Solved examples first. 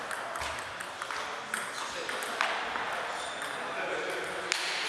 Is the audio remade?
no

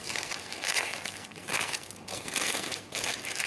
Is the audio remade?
yes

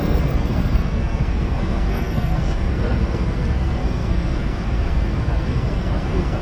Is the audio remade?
yes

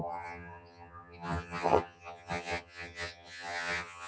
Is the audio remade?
yes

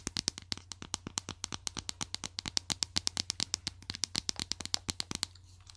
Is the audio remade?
no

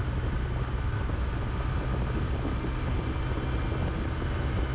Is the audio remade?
no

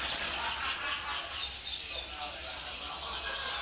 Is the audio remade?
no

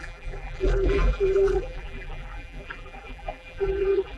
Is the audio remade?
yes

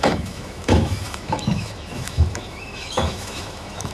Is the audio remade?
yes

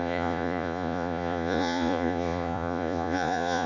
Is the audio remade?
yes